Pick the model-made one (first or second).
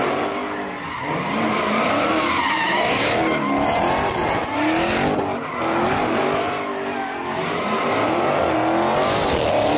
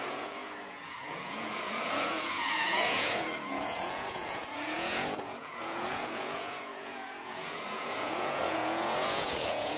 second